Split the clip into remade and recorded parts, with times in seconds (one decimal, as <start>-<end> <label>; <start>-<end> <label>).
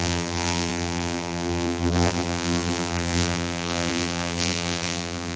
0.0-5.4 remade